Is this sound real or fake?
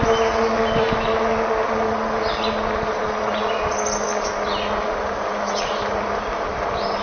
real